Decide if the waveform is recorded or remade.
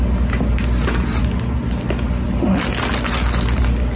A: recorded